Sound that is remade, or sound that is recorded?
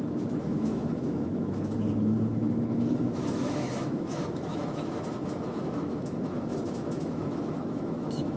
remade